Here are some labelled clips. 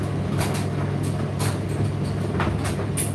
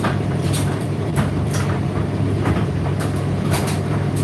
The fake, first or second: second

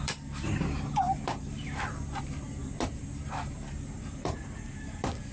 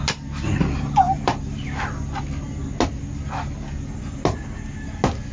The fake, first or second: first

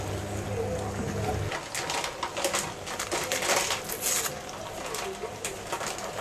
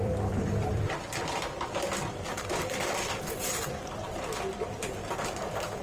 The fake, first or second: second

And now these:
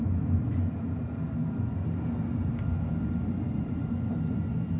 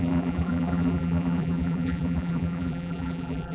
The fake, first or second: second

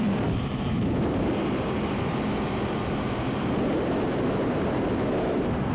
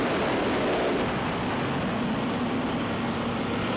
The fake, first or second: first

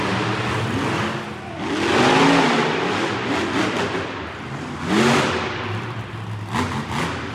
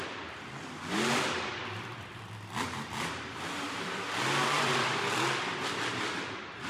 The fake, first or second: second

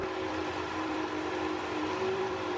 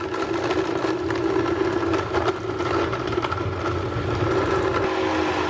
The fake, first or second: first